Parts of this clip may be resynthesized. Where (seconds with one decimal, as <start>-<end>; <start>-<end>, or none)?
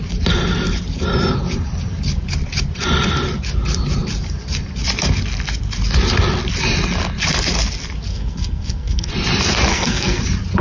8.1-9.1; 9.7-10.2